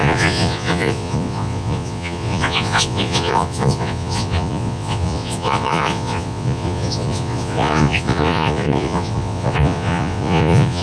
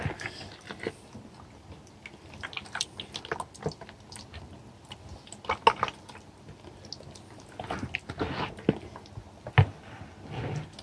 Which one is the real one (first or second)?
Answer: second